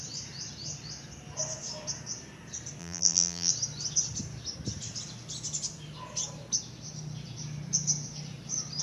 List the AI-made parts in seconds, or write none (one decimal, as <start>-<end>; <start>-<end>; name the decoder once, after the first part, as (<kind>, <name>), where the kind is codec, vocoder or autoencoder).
2.8-3.5 (vocoder, BigVGAN v2)